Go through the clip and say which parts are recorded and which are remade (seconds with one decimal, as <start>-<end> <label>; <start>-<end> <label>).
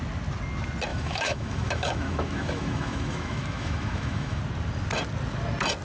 0.0-0.9 recorded; 0.9-4.4 remade; 4.4-5.8 recorded